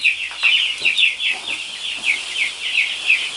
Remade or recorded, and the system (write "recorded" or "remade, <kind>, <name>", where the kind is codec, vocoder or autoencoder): recorded